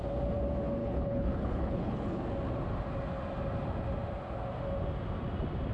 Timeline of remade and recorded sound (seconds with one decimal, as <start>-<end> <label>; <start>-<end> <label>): 0.0-0.8 recorded; 0.8-2.2 remade; 2.2-5.7 recorded